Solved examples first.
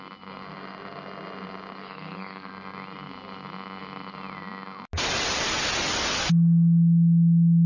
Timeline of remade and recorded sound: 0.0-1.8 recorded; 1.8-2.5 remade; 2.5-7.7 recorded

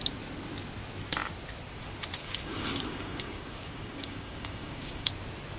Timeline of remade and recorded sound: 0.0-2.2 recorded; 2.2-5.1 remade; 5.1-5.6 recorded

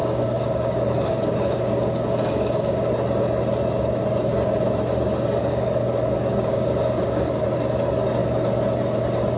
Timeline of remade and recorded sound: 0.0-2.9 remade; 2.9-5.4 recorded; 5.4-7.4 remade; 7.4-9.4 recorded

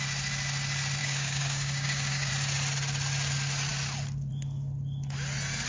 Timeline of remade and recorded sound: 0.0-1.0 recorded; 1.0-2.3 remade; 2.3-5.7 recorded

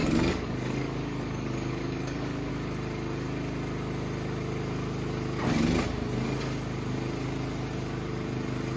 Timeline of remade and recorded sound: 0.0-2.5 remade; 2.5-8.8 recorded

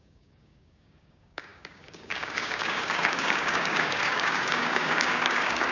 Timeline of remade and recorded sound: 0.0-5.7 remade

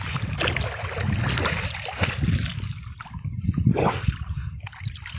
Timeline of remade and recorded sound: 0.0-5.2 recorded